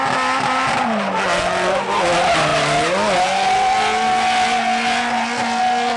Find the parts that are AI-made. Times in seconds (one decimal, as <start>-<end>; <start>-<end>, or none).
none